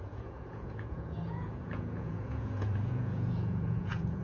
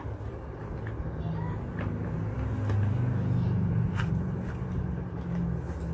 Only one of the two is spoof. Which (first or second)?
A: first